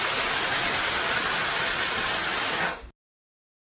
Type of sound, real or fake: real